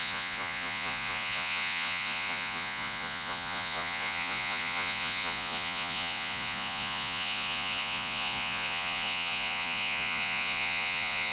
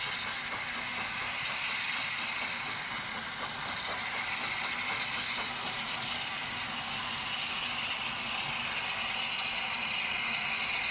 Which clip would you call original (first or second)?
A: second